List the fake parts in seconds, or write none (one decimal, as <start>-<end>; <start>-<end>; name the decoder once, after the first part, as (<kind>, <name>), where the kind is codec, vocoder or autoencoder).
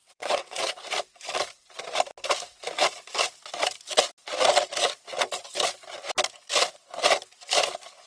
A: 0.0-0.7 (vocoder, WaveNeXt)